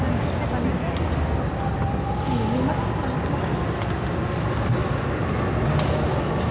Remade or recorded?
recorded